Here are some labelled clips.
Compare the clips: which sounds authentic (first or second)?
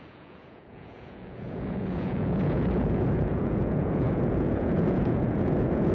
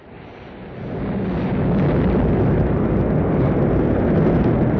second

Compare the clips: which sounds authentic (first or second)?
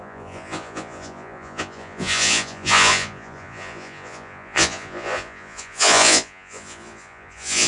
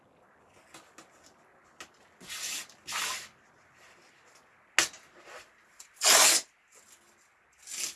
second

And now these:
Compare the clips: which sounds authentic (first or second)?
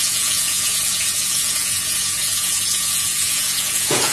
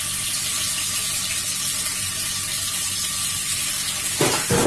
second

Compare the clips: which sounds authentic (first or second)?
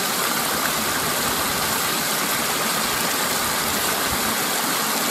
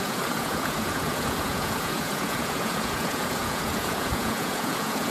first